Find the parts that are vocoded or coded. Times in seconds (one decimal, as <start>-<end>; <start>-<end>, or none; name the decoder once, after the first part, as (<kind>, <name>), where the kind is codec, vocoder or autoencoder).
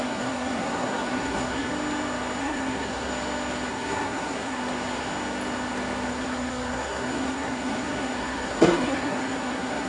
0.0-1.7 (codec, SNAC); 2.4-3.1; 3.7-4.6; 6.1-9.9